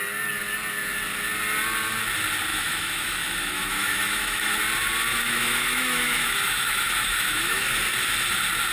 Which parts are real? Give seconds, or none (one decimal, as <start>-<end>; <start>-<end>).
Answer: 0.0-2.5; 4.6-5.1; 7.8-8.7